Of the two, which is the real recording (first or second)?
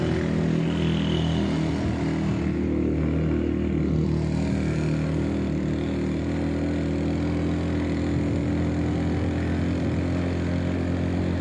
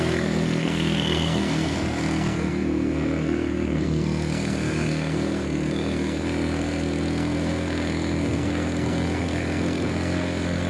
first